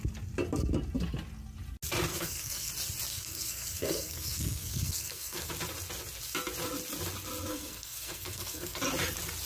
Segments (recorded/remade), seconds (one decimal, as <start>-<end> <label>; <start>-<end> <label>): 0.0-2.1 recorded; 2.1-2.7 remade; 2.7-3.1 recorded; 3.1-5.5 remade; 5.5-7.5 recorded; 7.5-8.8 remade; 8.8-9.5 recorded